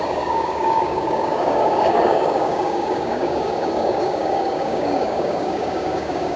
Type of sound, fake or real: fake